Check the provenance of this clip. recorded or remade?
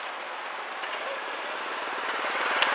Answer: recorded